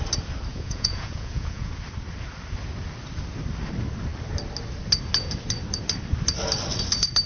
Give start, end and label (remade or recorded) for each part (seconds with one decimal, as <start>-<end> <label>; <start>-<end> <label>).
0.0-0.5 recorded; 0.5-1.7 remade; 1.7-7.3 recorded

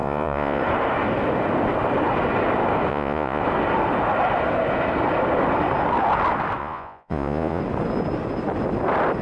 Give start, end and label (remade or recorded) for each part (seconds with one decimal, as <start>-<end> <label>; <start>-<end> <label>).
0.0-0.6 remade; 0.6-2.9 recorded; 2.9-3.4 remade; 3.4-6.6 recorded; 6.6-7.6 remade; 7.6-9.2 recorded

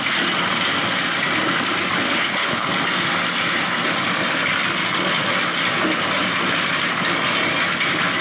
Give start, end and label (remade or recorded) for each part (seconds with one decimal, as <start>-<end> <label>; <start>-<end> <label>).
0.0-2.1 recorded; 2.1-2.7 remade; 2.7-8.2 recorded

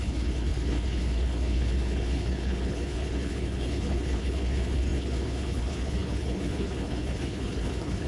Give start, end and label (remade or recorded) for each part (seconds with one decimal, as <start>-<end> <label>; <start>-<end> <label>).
0.0-8.1 remade